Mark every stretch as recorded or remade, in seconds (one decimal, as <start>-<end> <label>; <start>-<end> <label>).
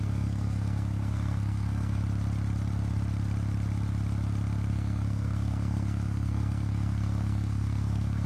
0.0-2.0 remade; 2.0-4.7 recorded; 4.7-8.3 remade